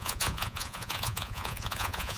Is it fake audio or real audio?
fake